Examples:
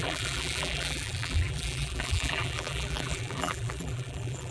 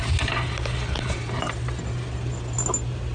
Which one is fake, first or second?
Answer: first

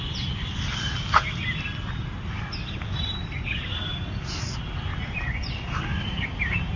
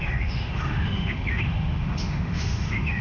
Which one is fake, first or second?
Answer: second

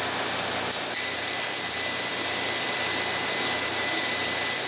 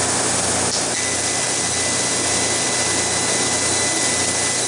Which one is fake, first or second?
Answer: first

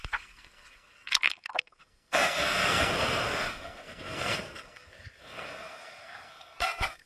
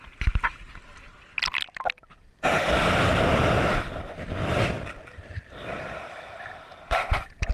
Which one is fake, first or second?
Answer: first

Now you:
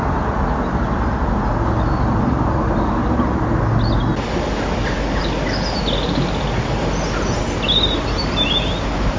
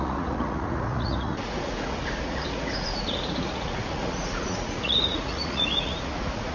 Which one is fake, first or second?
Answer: second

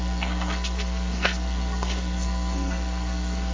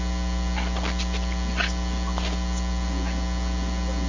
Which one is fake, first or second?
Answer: first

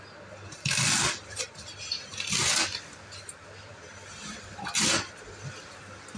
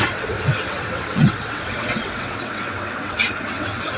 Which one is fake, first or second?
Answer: second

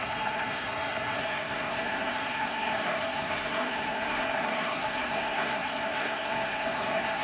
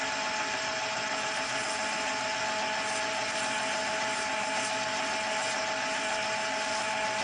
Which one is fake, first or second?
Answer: first